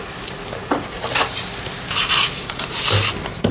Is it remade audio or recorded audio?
recorded